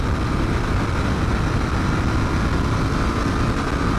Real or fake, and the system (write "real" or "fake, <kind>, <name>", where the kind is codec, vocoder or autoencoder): real